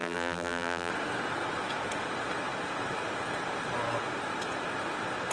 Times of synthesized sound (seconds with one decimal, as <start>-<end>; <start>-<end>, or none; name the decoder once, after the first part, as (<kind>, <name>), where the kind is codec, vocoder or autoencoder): 0.0-0.9 (vocoder, BigVGAN v2)